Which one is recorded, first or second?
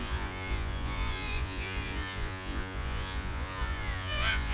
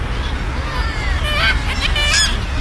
second